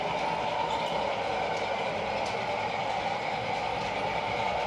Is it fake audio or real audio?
real